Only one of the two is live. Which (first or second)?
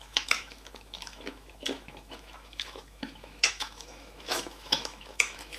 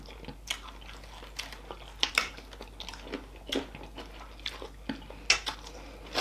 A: second